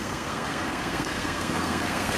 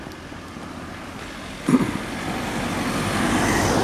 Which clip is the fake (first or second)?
first